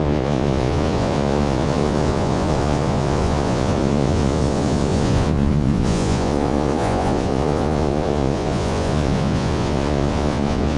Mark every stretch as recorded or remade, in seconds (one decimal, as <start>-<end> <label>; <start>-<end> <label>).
0.0-10.8 remade